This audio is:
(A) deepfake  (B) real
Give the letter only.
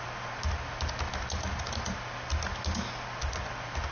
B